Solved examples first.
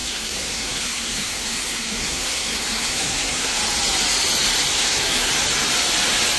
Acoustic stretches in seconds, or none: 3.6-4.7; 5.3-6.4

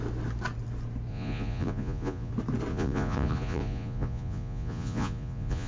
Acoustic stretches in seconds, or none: 0.0-1.1; 2.3-2.7

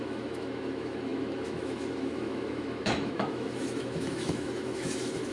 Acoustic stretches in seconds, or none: none

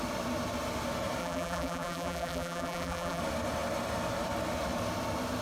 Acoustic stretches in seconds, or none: 0.0-1.2; 3.2-5.4

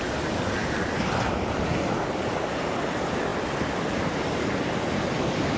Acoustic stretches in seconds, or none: 0.0-5.6

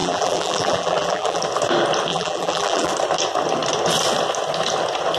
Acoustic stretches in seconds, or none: 1.4-2.1; 2.9-5.2